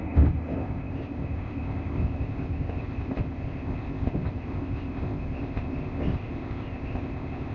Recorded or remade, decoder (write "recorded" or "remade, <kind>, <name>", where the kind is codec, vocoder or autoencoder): remade, codec, ZipCodec